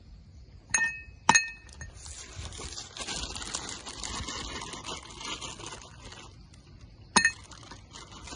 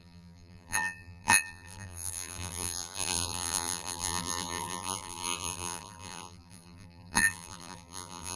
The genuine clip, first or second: first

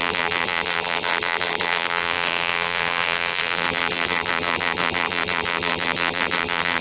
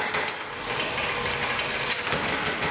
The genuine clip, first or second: second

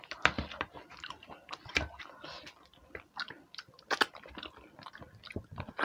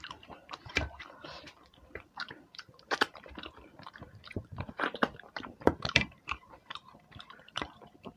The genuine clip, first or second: first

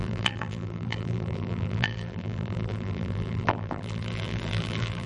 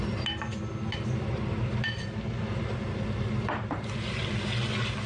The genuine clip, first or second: second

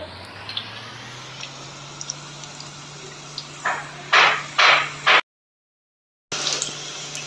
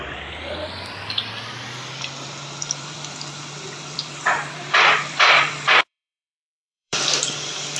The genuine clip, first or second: first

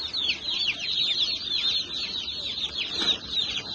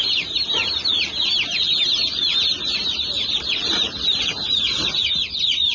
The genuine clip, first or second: first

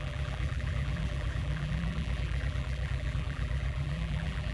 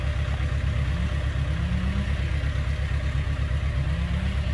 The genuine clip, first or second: second